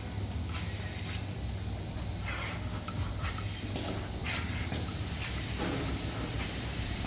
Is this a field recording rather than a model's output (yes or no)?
yes